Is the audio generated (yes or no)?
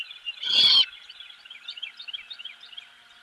no